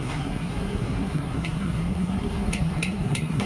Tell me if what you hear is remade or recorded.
remade